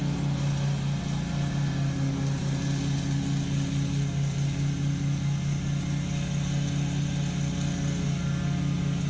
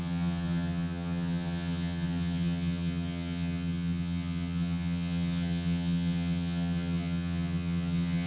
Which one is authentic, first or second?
first